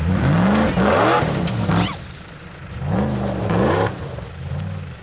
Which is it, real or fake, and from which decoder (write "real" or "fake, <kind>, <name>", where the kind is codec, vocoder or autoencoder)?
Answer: real